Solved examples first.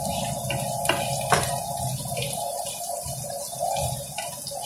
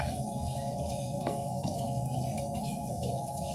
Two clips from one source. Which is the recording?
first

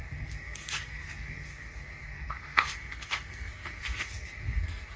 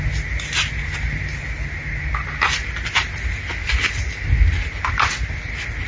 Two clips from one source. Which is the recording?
second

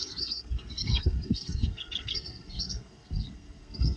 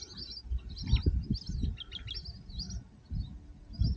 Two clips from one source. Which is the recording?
second